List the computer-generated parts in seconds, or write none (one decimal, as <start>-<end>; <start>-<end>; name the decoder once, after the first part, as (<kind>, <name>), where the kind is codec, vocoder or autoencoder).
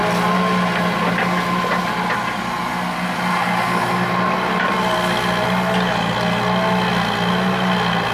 none